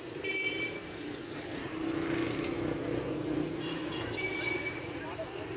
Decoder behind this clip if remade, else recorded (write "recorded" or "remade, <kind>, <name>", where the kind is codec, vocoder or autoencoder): recorded